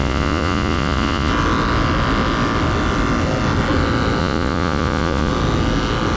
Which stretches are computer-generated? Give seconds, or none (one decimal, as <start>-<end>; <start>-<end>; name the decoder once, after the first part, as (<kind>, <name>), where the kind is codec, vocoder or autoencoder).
0.0-1.3 (vocoder, Vocos); 4.2-5.3